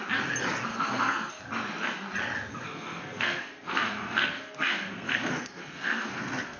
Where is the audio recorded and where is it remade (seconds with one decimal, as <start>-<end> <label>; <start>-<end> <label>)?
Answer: 0.0-0.7 recorded; 0.7-1.3 remade; 1.3-2.5 recorded; 2.5-6.6 remade